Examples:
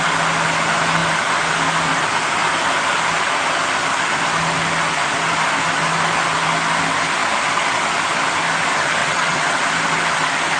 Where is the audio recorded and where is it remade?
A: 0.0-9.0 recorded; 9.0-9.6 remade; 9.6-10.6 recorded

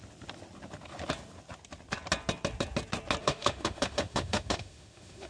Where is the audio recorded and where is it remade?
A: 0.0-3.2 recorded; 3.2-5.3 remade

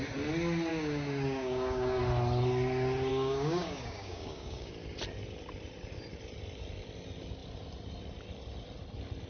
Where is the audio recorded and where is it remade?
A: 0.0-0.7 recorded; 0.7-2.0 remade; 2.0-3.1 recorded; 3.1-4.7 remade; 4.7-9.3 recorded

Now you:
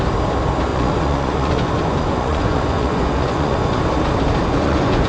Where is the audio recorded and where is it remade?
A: 0.0-0.7 recorded; 0.7-3.8 remade; 3.8-4.4 recorded; 4.4-5.1 remade